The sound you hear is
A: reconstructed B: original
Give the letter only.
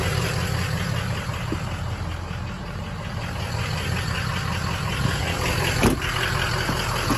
B